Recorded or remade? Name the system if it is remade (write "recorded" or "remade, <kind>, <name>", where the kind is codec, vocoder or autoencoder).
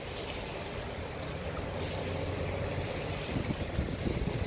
recorded